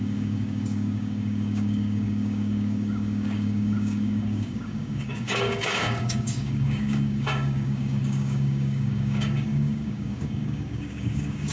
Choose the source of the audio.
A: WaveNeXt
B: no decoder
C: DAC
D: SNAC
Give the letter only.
C